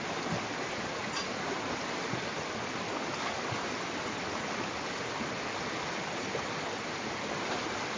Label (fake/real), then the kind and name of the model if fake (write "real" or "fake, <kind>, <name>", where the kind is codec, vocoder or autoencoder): real